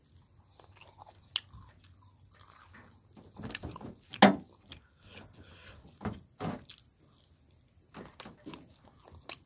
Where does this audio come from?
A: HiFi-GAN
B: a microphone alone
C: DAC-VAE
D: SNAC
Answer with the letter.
B